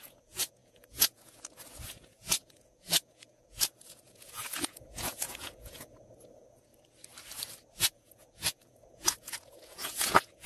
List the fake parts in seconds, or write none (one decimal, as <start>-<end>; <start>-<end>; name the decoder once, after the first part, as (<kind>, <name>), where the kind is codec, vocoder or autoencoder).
0.0-6.7 (vocoder, Vocos); 7.8-10.5